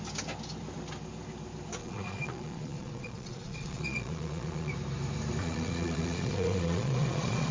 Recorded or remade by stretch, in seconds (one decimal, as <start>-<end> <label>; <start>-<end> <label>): 0.0-1.8 recorded; 1.8-4.7 remade; 4.7-5.4 recorded; 5.4-7.5 remade